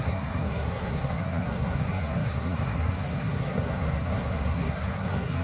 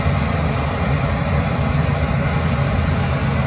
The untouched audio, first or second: second